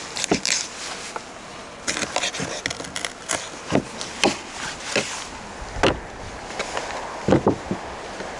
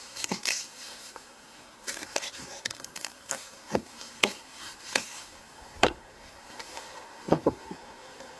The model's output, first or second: second